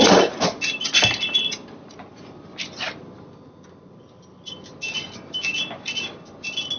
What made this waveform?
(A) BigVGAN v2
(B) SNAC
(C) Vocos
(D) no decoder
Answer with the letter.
D